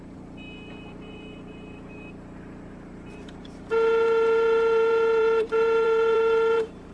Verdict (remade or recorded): remade